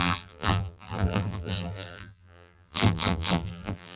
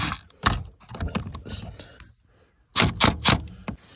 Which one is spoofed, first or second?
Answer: first